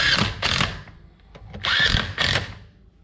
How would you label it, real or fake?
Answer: real